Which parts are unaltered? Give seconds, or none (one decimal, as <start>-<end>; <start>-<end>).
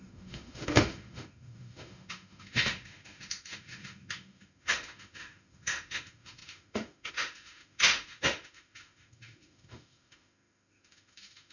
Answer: none